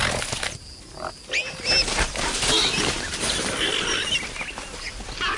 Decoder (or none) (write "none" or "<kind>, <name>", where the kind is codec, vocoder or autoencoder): none